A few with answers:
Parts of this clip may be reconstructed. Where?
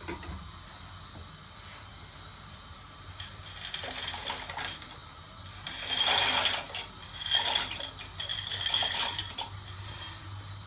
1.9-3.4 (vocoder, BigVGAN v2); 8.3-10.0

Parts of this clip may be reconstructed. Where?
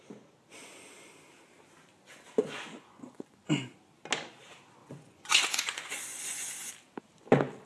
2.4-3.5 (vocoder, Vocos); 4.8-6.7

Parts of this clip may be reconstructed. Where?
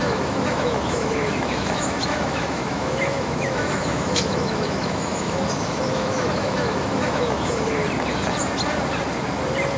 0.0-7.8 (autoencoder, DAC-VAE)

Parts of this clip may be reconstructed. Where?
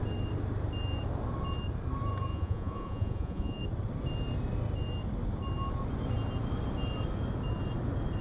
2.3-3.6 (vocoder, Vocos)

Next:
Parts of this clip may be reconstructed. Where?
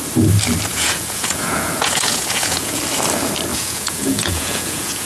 0.7-2.8 (vocoder, Vocos); 3.5-5.1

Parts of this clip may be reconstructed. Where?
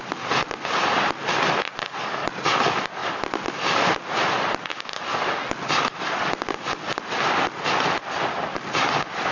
none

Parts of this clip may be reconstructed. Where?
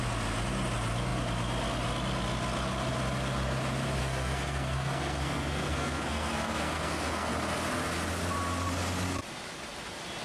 4.0-7.3 (codec, SNAC)